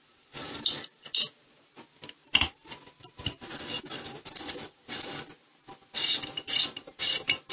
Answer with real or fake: real